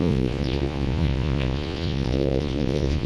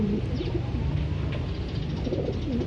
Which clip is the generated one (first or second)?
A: first